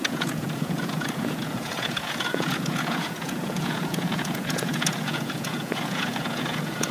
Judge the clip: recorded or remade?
remade